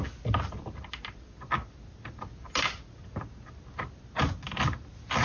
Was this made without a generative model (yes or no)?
yes